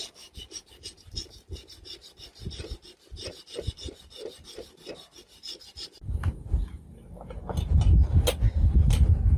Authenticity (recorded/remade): recorded